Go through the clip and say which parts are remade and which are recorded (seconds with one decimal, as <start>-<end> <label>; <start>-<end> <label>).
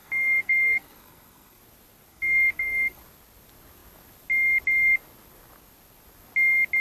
0.0-1.6 remade; 1.6-2.1 recorded; 2.1-3.0 remade; 3.0-6.8 recorded